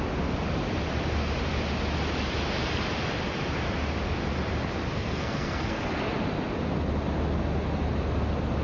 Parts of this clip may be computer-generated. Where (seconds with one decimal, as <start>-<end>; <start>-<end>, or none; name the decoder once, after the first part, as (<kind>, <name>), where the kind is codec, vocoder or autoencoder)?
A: 5.0-5.8 (codec, SNAC)

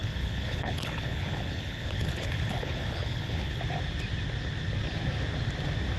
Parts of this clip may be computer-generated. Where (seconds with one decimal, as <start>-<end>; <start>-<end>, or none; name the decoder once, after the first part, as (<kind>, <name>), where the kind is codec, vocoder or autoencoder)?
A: 0.0-3.6 (codec, HILCodec)

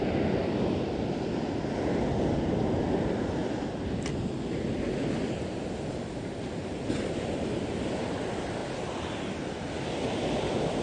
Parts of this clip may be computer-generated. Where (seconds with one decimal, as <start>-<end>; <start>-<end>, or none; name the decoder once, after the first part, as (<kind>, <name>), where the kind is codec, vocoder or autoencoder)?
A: none

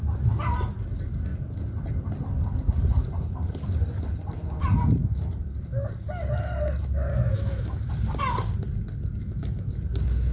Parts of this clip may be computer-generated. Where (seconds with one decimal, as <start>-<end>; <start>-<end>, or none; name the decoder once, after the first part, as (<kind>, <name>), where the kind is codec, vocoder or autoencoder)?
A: 7.1-7.9 (autoencoder, DAC-VAE); 9.2-9.8

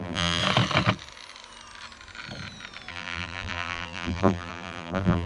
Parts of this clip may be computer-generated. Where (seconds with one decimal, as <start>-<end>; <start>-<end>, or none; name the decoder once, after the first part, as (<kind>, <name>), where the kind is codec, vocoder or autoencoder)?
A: 0.0-0.4 (vocoder, BigVGAN v2); 2.9-5.3

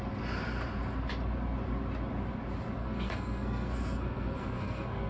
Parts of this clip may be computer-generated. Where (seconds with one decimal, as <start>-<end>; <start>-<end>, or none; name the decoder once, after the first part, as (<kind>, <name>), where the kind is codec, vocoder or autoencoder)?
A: 2.8-5.1 (codec, SNAC)

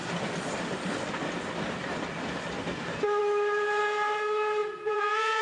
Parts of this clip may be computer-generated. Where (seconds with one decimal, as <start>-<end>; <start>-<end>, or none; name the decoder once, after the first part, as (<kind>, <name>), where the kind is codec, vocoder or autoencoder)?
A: 4.6-5.4 (vocoder, Vocos)